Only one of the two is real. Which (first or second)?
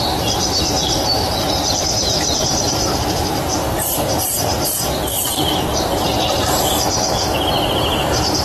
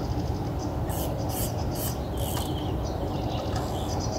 second